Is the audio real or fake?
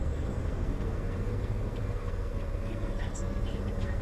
fake